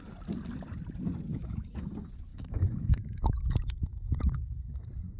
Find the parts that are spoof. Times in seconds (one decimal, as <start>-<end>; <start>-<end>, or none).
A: 1.3-1.9; 2.3-4.8